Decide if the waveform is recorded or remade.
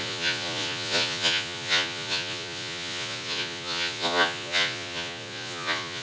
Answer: remade